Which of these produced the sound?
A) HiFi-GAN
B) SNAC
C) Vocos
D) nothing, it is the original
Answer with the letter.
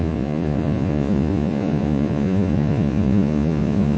C